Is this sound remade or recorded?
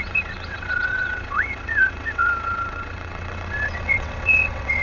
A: remade